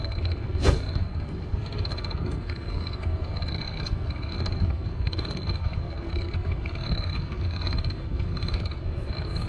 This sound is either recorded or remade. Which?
remade